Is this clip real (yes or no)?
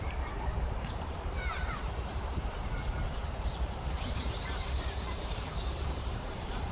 no